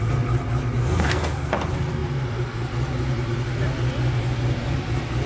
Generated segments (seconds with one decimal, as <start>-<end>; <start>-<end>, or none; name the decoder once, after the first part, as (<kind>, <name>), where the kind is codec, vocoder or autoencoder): 0.8-1.5 (codec, SNAC)